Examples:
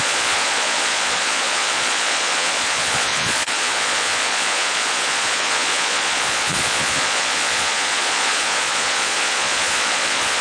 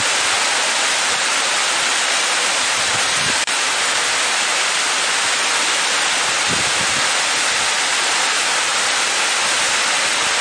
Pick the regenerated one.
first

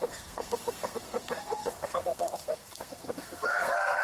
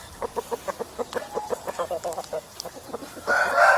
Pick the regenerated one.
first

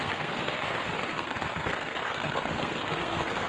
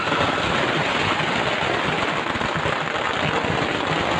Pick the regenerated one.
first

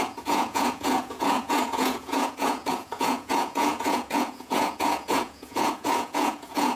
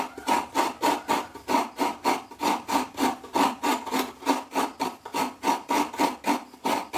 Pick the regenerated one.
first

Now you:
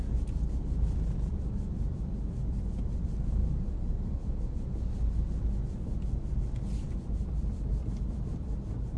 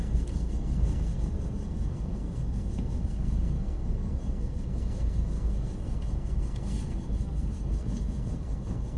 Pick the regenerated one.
second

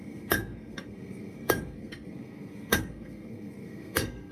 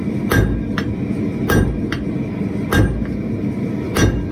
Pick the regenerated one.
first